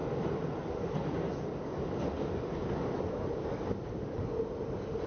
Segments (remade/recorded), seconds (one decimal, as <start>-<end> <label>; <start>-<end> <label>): 0.0-3.1 recorded; 3.1-5.1 remade